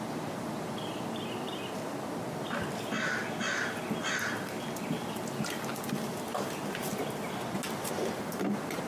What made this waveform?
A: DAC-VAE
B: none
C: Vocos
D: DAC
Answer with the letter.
B